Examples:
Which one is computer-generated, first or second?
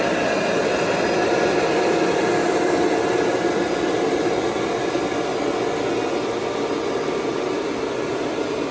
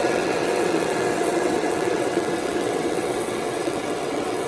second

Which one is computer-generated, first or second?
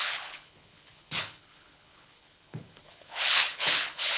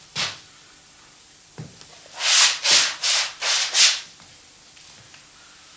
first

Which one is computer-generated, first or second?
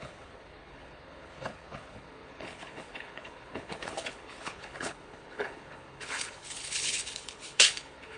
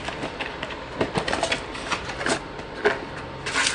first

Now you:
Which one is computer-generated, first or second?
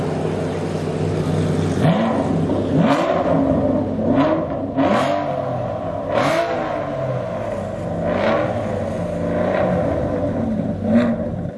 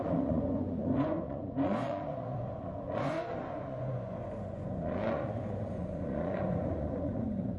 second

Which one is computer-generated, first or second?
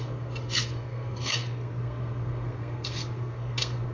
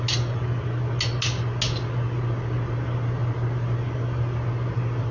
first